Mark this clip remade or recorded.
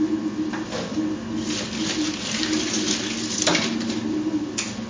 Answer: recorded